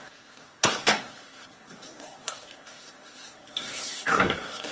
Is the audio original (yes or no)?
no